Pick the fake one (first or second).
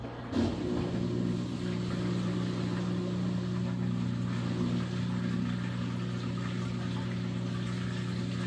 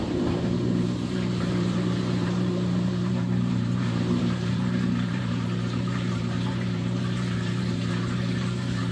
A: second